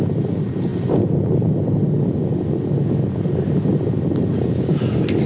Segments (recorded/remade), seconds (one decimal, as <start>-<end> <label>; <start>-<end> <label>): 0.0-5.3 recorded